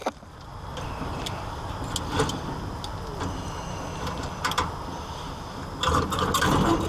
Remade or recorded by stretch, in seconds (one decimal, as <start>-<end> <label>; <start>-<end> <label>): 0.0-6.9 recorded